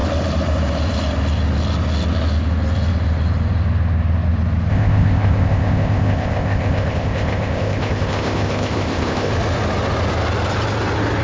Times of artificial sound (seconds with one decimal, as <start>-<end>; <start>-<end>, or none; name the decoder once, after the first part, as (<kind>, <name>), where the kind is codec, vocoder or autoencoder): 4.7-9.3 (codec, ZipCodec)